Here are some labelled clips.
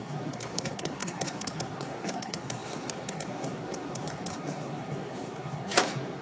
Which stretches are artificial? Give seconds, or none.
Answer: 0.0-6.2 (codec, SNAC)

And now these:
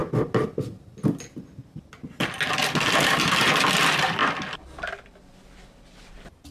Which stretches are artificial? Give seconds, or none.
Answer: none

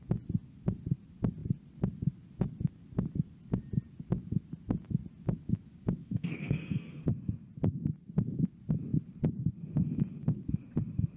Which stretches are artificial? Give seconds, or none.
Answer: 6.0-7.0 (codec, SNAC)

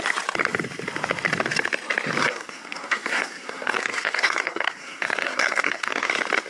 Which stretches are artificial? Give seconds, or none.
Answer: 2.2-6.1 (codec, SNAC)